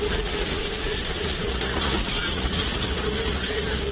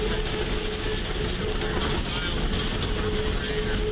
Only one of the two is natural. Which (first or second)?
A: second